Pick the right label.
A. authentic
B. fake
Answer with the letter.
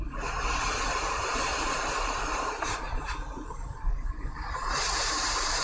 B